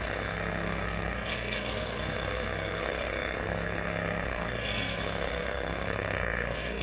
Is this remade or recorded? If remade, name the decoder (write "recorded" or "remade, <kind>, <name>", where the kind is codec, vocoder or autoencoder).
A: remade, codec, SNAC